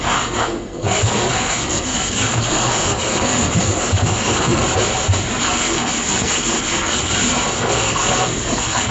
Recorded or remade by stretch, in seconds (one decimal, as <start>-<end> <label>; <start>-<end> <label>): 0.0-4.6 remade; 4.6-5.4 recorded; 5.4-7.1 remade; 7.1-7.6 recorded; 7.6-8.9 remade